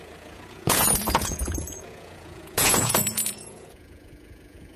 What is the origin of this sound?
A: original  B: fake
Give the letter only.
B